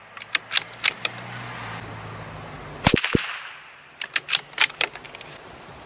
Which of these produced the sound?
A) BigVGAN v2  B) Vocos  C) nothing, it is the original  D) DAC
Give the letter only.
C